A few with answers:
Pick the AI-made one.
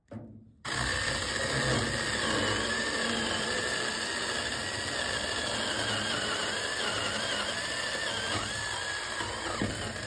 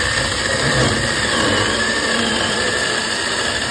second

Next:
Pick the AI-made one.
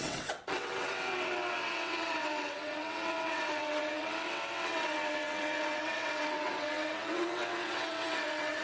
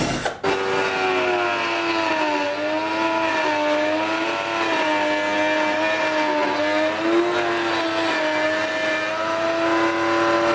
first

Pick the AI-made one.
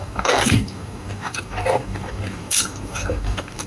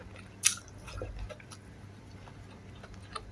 first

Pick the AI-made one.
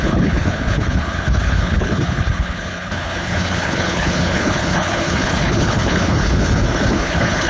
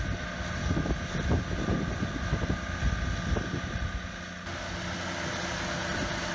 first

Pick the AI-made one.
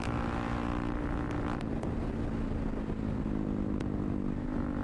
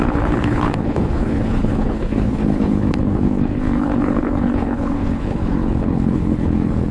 second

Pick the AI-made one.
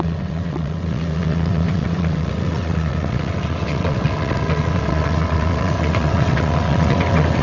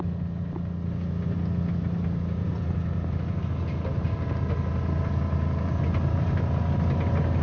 first